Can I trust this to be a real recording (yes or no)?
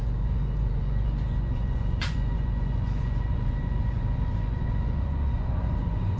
no